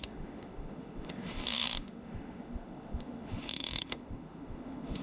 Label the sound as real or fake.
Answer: fake